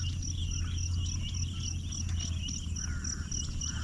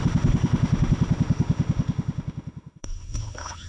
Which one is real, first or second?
first